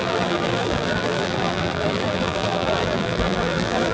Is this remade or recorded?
remade